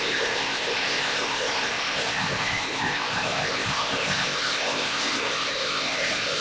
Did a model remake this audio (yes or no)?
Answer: yes